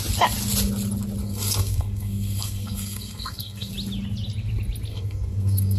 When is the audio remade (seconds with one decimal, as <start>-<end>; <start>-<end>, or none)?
1.2-3.7; 4.9-5.8